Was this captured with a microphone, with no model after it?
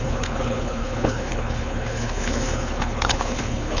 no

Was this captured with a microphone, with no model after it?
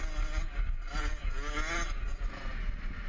yes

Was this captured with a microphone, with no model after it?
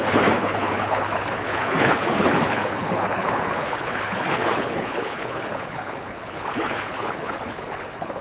no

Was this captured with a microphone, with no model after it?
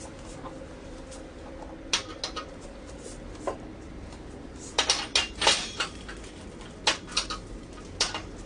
yes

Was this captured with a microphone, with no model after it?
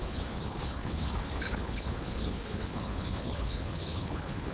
no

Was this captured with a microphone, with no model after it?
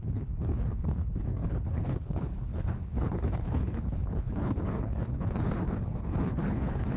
no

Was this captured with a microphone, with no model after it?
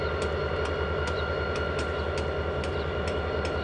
yes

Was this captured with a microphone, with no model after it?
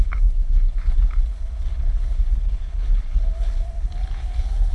no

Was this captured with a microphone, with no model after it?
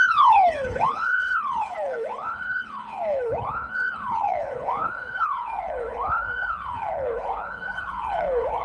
no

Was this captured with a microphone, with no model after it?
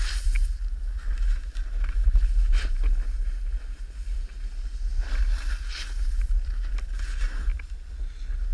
yes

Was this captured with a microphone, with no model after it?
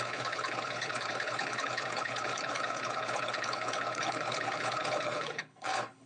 no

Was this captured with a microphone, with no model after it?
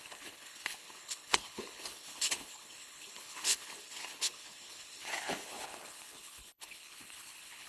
no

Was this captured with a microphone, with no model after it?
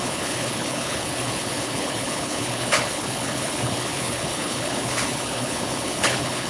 no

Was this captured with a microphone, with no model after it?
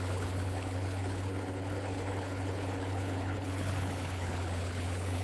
no